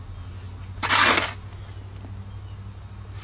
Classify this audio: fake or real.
real